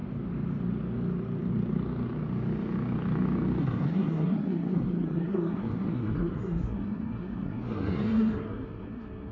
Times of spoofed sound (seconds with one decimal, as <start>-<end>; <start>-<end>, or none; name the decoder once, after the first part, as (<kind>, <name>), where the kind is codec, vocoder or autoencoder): 3.6-9.3 (codec, SNAC)